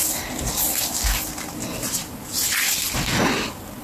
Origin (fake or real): real